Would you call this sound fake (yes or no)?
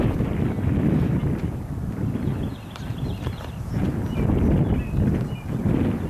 no